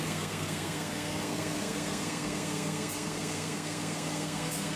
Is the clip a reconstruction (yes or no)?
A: yes